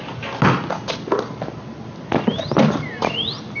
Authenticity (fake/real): real